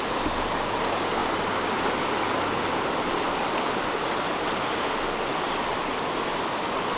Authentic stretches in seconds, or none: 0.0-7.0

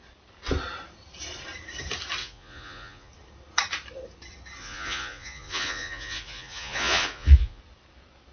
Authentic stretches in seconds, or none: 0.0-2.2; 3.1-4.6; 7.6-8.3

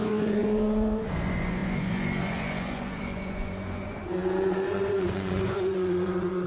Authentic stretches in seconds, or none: none

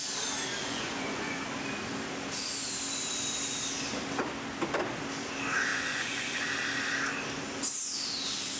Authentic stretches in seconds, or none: 0.0-0.6; 1.4-5.7; 6.4-8.6

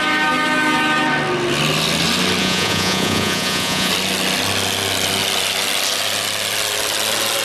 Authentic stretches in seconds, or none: 0.0-2.4; 3.9-7.4